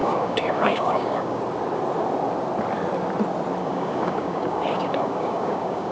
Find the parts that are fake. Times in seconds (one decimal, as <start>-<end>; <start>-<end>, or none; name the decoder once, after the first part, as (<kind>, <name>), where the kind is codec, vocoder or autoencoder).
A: 0.0-1.4 (codec, DAC); 3.6-5.9